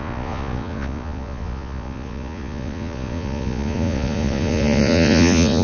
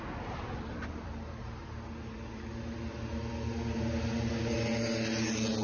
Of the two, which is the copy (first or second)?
first